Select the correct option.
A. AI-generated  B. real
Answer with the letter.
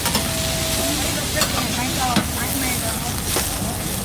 B